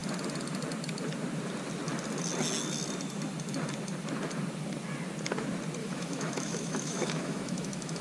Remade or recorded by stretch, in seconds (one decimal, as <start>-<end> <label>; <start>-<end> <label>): 0.0-5.8 recorded; 5.8-8.0 remade